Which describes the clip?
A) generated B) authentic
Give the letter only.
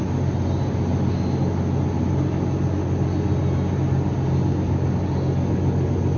B